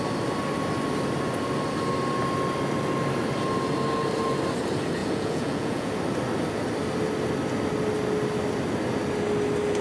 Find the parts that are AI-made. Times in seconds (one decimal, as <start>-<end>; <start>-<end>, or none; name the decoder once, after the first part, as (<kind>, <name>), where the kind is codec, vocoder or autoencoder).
5.0-5.9 (vocoder, Vocos)